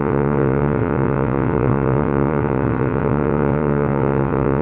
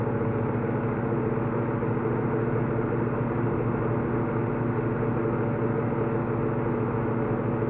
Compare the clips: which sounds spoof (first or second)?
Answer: first